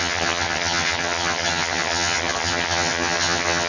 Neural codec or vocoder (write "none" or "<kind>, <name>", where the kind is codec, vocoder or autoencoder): vocoder, HiFi-GAN